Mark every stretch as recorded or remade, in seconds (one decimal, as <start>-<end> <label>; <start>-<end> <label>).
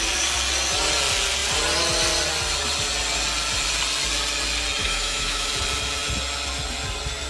0.0-4.8 recorded; 4.8-5.5 remade; 5.5-7.3 recorded